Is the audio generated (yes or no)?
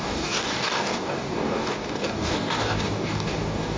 yes